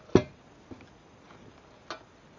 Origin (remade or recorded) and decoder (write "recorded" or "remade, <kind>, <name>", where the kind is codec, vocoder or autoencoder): recorded